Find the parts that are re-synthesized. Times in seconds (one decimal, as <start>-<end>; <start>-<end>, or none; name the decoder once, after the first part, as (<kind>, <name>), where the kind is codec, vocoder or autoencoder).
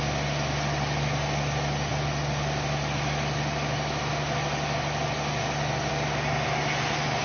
none